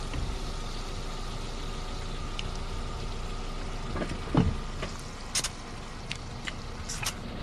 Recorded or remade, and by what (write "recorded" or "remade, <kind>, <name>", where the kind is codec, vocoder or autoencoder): recorded